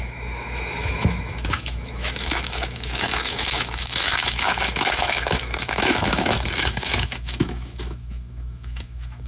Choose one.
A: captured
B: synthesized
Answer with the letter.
B